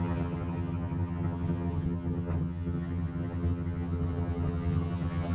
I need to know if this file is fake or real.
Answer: fake